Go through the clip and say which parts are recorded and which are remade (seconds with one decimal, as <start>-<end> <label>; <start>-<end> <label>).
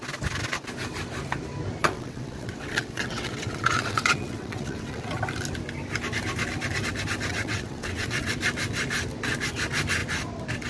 0.0-1.8 recorded; 1.8-5.2 remade; 5.2-7.3 recorded; 7.3-8.3 remade; 8.3-10.7 recorded